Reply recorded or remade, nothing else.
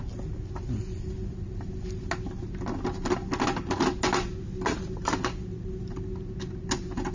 recorded